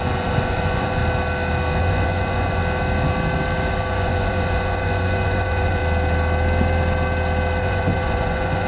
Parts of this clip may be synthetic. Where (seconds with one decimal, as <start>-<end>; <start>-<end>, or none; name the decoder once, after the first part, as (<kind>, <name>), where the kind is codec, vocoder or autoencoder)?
0.0-1.0 (vocoder, Vocos); 1.8-2.6; 3.7-5.8; 7.6-8.7